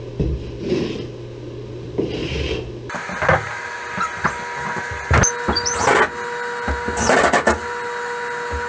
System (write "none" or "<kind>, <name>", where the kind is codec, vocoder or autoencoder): none